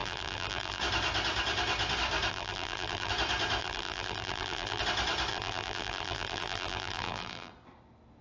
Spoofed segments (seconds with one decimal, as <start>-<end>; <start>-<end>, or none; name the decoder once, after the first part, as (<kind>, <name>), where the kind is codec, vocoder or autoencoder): 0.0-0.8 (vocoder, BigVGAN v2); 2.3-3.1; 3.6-4.8; 5.3-7.5